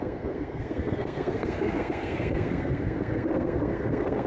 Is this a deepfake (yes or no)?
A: yes